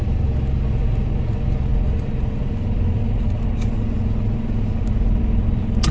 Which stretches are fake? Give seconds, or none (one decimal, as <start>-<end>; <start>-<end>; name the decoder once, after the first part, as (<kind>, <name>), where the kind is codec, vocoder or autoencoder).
none